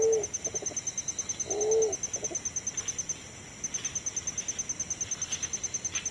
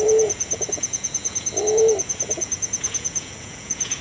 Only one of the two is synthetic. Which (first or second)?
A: second